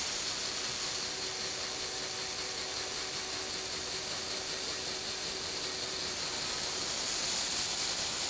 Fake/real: real